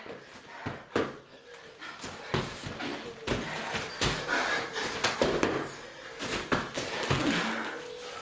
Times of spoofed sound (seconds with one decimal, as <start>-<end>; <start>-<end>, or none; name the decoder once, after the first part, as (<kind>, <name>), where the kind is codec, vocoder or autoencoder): none